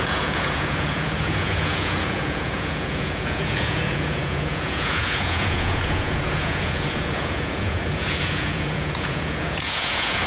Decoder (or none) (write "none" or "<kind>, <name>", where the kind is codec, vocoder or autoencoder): vocoder, Vocos